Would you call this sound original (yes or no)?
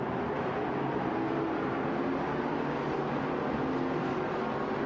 yes